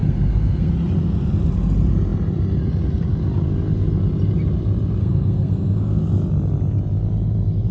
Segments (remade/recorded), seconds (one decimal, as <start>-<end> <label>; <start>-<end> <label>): 0.0-0.7 remade; 0.7-5.0 recorded; 5.0-6.0 remade; 6.0-7.7 recorded